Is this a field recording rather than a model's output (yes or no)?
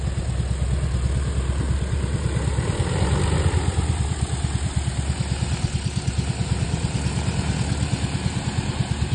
yes